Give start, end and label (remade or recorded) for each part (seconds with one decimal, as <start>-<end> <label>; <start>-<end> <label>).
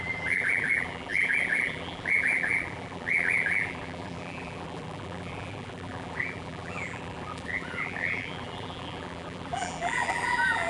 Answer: 0.0-10.7 remade